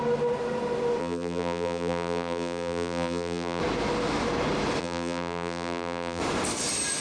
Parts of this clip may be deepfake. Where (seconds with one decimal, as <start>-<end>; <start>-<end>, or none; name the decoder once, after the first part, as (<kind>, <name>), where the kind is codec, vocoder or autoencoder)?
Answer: 1.0-3.6 (vocoder, BigVGAN v2); 4.8-6.2